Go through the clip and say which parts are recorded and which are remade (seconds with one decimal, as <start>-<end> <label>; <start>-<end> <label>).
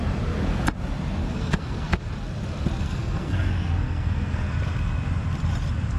0.0-1.2 recorded; 1.2-2.1 remade; 2.1-2.8 recorded; 2.8-4.5 remade; 4.5-6.0 recorded